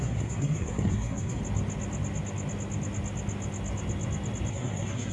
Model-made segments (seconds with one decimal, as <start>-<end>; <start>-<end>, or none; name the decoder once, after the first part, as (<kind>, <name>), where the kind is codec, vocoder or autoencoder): 0.0-1.4 (codec, SNAC); 4.5-5.1